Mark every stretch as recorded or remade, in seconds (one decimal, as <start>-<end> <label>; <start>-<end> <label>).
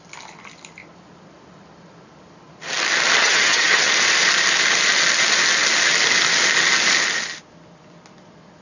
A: 0.0-3.2 recorded; 3.2-3.9 remade; 3.9-8.6 recorded